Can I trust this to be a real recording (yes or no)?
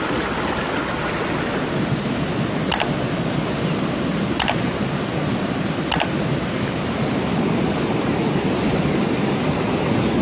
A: yes